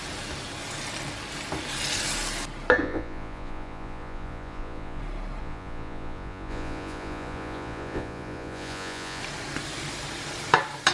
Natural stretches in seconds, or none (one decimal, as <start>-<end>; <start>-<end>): 0.0-2.8; 5.0-5.4; 9.2-10.9